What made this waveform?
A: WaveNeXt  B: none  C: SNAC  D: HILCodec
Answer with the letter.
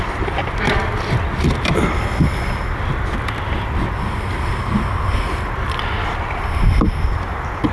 B